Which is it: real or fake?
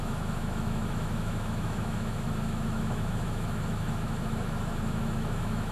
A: fake